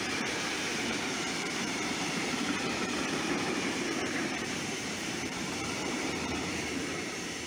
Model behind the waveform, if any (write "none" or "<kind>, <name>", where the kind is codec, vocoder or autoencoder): vocoder, BigVGAN v2